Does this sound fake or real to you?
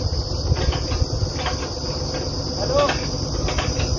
real